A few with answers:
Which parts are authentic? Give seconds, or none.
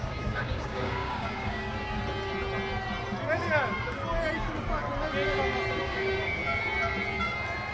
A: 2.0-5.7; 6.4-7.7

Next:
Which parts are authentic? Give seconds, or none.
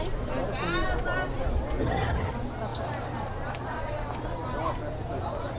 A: 0.0-1.8; 2.3-5.6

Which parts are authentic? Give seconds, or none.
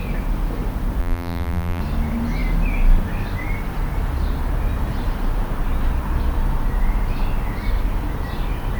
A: 0.0-1.0; 1.8-8.8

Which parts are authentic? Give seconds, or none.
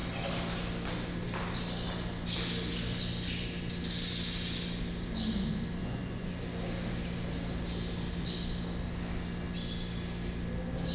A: 0.0-5.8; 6.3-10.9